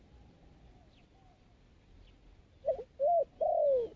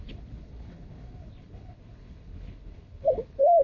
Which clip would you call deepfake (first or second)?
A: second